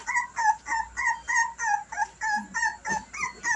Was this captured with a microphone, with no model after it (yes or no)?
yes